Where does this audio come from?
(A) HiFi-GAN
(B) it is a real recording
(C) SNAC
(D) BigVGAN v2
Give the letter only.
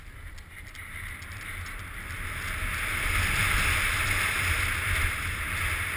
B